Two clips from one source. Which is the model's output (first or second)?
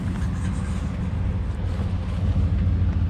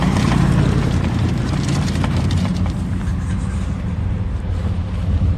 second